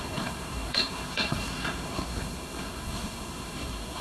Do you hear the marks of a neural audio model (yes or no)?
yes